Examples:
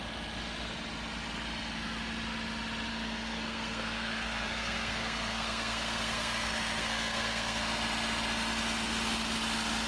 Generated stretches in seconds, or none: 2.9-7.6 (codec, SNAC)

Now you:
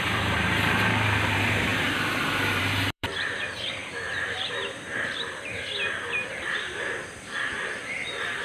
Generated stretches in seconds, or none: 0.0-1.7 (vocoder, BigVGAN v2); 2.6-8.4

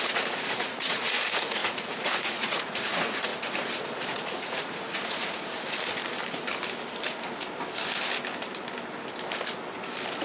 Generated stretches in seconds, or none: 0.0-3.3 (vocoder, Vocos); 4.1-5.5

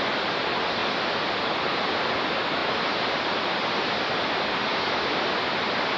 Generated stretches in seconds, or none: none

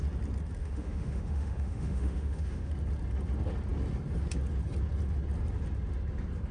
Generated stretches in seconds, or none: 0.6-2.7 (autoencoder, DAC-VAE)

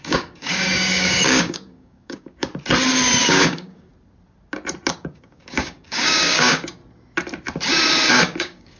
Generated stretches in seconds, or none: 0.0-2.5 (codec, DAC); 3.2-3.9; 4.9-6.8; 8.1-8.8

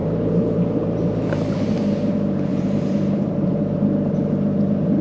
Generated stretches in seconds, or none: 0.0-2.1 (vocoder, BigVGAN v2); 2.5-3.6